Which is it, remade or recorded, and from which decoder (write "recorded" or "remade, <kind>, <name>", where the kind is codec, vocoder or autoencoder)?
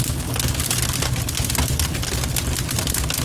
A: recorded